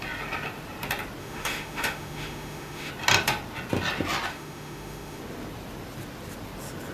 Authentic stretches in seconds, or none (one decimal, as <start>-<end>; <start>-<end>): 0.0-1.2; 2.9-4.3; 5.2-6.9